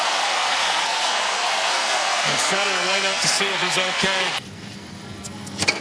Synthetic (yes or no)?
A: yes